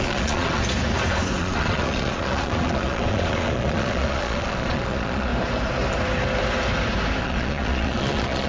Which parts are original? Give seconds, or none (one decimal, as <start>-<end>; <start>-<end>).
0.6-1.4; 5.3-7.2